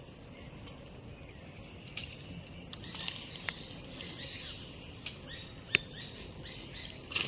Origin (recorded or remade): recorded